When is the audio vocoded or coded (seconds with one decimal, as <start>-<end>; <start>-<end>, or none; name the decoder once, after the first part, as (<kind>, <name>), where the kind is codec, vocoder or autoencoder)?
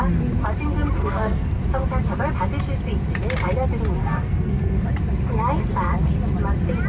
1.0-1.6 (codec, SNAC); 4.0-4.9